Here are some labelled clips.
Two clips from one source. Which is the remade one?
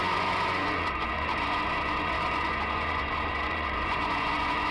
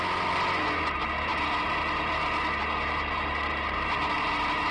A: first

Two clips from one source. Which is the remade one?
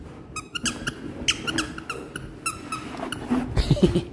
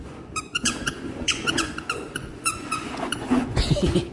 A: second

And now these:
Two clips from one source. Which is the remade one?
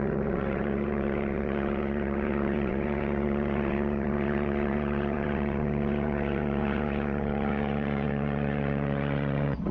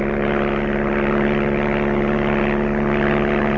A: first